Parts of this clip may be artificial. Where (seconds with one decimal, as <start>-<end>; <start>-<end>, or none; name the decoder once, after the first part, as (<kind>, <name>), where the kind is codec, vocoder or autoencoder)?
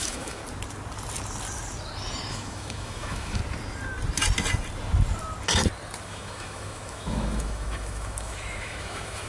0.0-0.4 (autoencoder, DAC-VAE); 2.3-3.4; 6.0-9.3